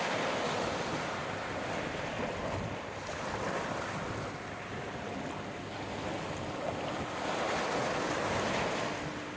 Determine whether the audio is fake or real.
real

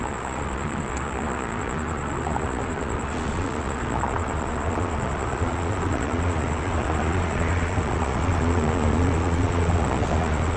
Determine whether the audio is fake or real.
fake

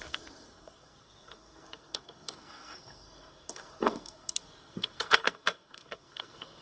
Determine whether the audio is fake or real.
fake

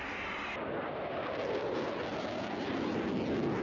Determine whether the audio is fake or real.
real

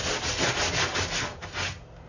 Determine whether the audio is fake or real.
real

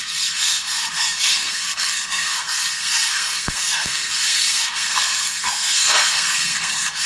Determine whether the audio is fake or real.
fake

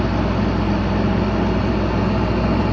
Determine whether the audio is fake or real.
real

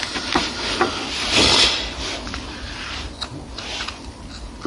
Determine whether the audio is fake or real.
real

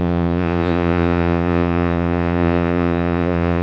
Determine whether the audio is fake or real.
fake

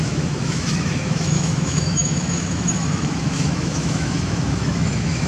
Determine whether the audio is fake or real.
fake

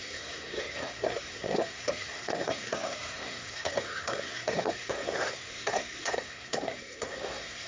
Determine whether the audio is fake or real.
fake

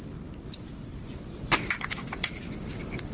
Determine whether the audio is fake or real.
real